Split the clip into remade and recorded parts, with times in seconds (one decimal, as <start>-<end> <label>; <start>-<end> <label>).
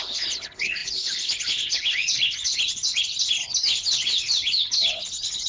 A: 0.0-5.5 remade